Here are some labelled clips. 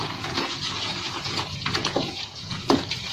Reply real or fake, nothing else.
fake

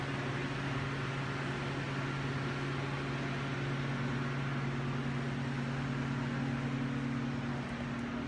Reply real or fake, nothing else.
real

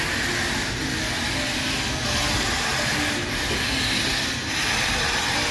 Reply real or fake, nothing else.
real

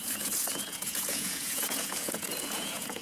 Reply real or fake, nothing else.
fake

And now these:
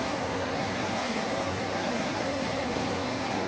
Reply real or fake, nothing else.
fake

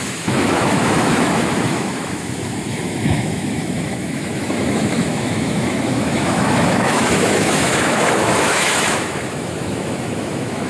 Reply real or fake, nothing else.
fake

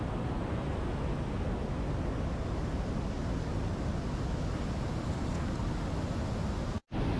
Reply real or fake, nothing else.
real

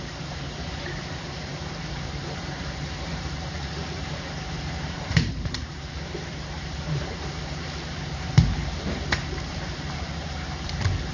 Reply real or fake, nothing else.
fake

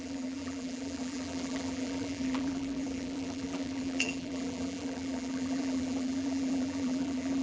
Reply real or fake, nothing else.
fake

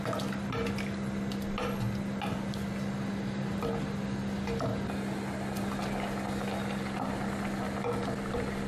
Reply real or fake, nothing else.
real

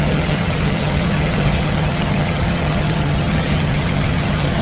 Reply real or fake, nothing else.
fake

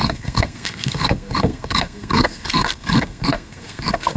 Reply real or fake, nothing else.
fake